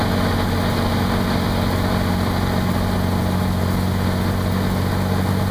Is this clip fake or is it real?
real